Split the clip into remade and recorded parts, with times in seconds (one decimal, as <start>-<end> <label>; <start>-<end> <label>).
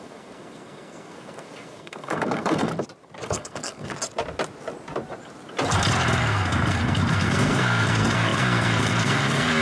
0.0-2.7 remade; 2.7-3.2 recorded; 3.2-3.9 remade; 3.9-6.2 recorded; 6.2-9.6 remade